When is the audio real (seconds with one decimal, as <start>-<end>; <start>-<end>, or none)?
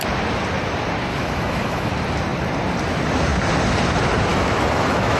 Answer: 0.0-1.1; 1.9-4.3